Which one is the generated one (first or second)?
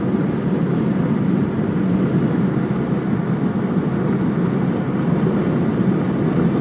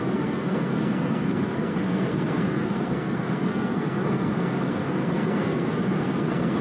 second